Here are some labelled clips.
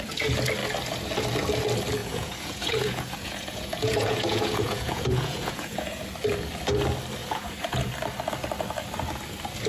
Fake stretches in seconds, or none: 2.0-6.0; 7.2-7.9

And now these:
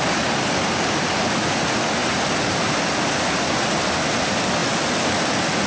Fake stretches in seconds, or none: none

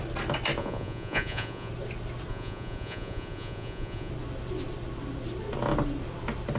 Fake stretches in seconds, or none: 0.6-1.7; 2.3-4.1

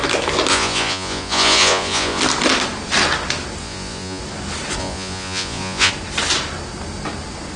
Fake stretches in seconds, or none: 0.5-2.2; 3.6-4.2; 4.8-5.9